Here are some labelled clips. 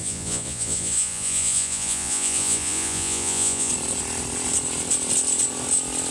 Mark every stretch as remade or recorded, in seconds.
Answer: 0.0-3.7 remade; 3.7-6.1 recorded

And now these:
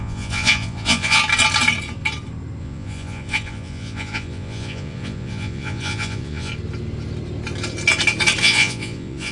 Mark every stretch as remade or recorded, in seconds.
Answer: 0.0-1.2 remade; 1.2-2.6 recorded; 2.6-6.5 remade; 6.5-8.4 recorded; 8.4-9.3 remade

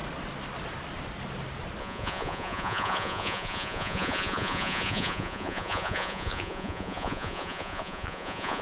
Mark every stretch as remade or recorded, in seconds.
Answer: 0.0-1.8 recorded; 1.8-8.6 remade

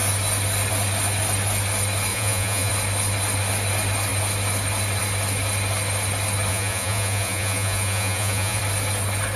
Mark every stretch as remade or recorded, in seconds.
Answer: 0.0-2.1 recorded; 2.1-2.7 remade; 2.7-6.5 recorded; 6.5-8.6 remade; 8.6-9.4 recorded

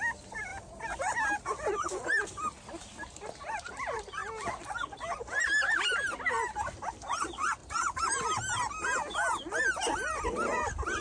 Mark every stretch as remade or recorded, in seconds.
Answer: 0.0-11.0 recorded

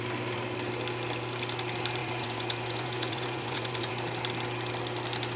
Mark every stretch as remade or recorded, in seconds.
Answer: 0.0-2.0 recorded; 2.0-3.9 remade; 3.9-5.4 recorded

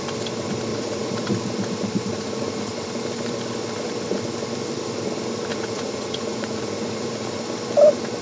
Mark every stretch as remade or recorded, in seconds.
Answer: 0.0-0.7 recorded; 0.7-1.3 remade; 1.3-2.1 recorded; 2.1-2.7 remade; 2.7-5.5 recorded; 5.5-7.4 remade; 7.4-8.2 recorded